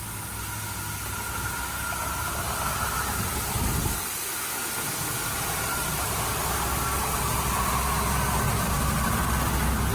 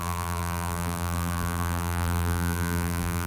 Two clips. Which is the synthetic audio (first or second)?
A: second